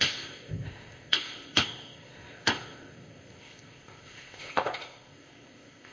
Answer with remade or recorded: remade